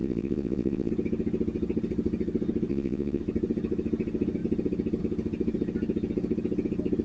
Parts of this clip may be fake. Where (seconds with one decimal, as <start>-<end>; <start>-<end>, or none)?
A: 0.0-0.9; 2.7-3.2